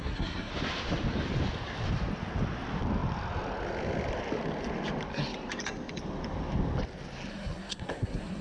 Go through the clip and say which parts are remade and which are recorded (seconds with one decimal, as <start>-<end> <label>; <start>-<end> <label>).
0.0-0.5 remade; 0.5-7.3 recorded; 7.3-8.4 remade